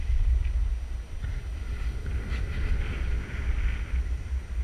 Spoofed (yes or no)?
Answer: no